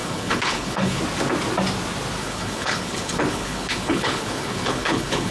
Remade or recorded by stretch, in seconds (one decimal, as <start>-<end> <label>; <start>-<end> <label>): 0.0-1.0 remade; 1.0-2.2 recorded; 2.2-5.3 remade